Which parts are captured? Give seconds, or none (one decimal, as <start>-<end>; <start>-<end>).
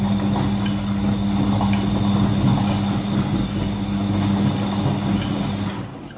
0.0-6.2